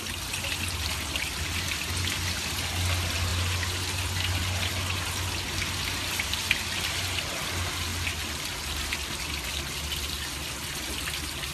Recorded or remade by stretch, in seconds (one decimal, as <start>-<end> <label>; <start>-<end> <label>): 0.0-11.5 recorded